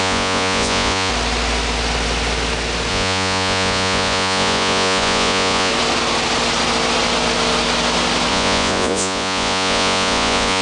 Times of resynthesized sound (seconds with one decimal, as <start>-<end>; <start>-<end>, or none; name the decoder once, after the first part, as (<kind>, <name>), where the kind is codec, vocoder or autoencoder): 0.0-1.1 (vocoder, Vocos); 2.9-5.7; 8.3-10.6